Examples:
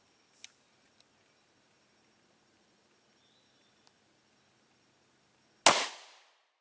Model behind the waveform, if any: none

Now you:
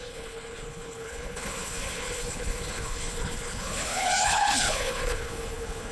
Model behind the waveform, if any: codec, HILCodec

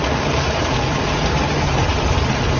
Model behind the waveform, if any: none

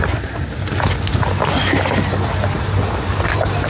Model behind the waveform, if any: none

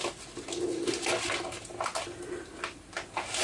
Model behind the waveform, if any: none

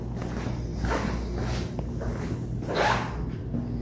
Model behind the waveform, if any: none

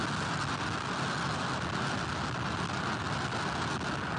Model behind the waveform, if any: none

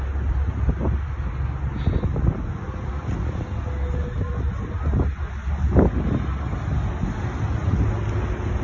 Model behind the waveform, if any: none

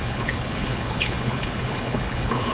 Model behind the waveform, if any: codec, HILCodec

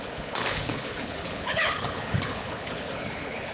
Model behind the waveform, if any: codec, HILCodec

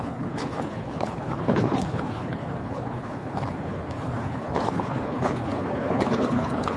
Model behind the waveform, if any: codec, HILCodec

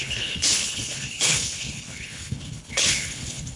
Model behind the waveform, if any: codec, HILCodec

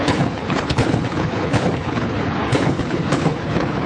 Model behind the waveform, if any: codec, HILCodec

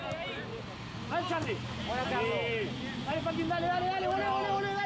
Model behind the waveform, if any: none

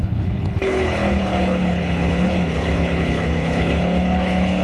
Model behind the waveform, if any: codec, HILCodec